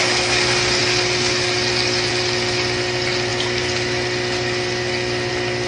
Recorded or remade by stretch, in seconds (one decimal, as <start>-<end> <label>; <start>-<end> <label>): 0.0-5.7 recorded